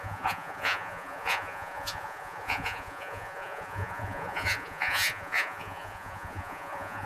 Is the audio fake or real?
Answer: fake